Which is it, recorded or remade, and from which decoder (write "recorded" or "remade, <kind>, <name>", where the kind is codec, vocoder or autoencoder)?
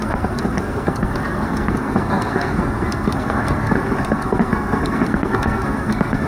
remade, codec, SNAC